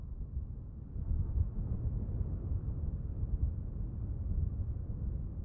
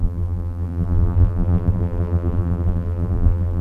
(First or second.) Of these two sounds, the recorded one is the first